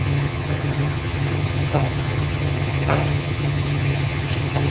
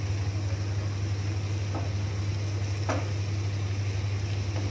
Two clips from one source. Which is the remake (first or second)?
first